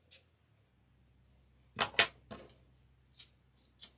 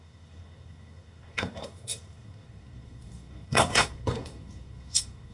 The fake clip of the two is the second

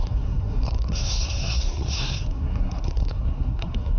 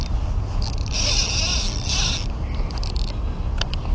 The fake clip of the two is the first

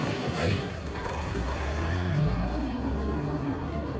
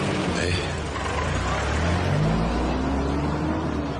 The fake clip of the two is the first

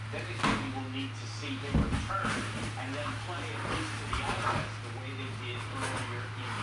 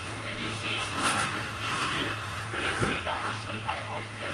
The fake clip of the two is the second